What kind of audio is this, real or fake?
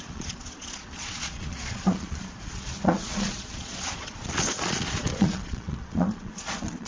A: fake